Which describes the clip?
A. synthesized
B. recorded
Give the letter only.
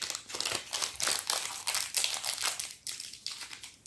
B